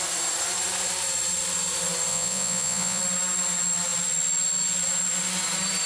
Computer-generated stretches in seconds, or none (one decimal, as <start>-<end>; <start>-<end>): 2.1-3.0